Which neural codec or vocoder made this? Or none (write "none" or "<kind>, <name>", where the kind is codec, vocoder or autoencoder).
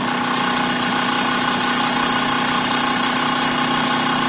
none